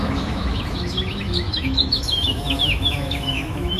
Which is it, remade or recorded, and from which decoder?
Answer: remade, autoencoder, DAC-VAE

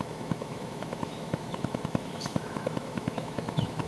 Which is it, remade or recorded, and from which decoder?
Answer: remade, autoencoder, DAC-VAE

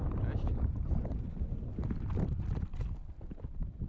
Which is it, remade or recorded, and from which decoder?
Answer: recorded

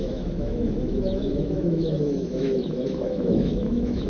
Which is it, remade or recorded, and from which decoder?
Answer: remade, autoencoder, DAC-VAE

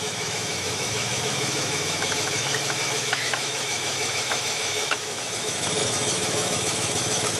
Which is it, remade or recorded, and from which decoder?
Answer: remade, autoencoder, DAC-VAE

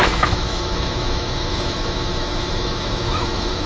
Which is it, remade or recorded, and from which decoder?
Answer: remade, autoencoder, DAC-VAE